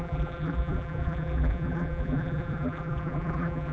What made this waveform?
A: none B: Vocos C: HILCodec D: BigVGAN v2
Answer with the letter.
D